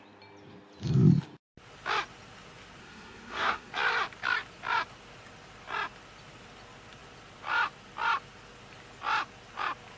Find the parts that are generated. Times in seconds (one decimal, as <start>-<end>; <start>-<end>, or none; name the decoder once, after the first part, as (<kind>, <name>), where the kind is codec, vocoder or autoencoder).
2.8-3.7 (codec, SNAC)